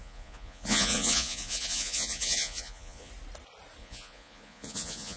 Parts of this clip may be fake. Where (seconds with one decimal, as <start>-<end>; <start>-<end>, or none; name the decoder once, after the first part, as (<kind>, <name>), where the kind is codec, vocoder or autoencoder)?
0.0-3.1 (vocoder, Vocos); 3.8-5.2